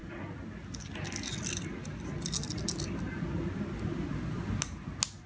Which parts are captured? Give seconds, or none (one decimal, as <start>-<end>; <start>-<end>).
0.0-5.3